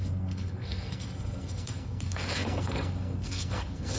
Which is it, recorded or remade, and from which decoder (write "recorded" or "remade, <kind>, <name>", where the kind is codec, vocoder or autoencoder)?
remade, codec, SNAC